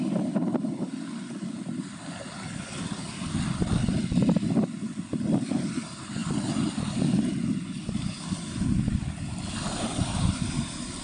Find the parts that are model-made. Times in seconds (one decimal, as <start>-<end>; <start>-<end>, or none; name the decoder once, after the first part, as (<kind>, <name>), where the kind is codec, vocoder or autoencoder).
none